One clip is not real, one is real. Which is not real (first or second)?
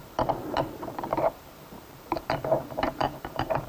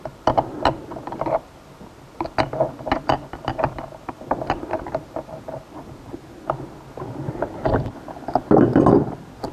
first